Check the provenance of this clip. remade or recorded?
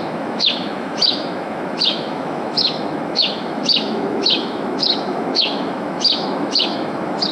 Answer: remade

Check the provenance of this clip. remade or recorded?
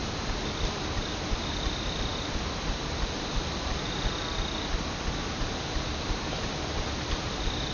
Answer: recorded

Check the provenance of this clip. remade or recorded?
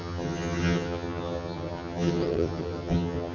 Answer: remade